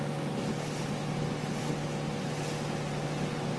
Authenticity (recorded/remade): recorded